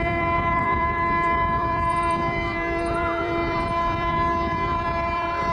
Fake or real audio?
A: fake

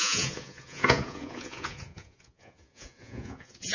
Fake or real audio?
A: fake